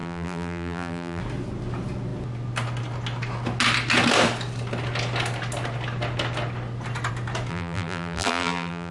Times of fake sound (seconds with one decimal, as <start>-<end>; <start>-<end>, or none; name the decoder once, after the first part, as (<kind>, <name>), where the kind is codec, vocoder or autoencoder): 0.0-1.2 (vocoder, BigVGAN v2); 7.5-8.9